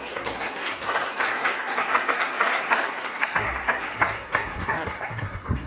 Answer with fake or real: fake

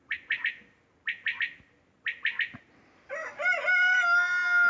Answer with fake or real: real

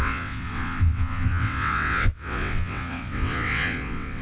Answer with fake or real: fake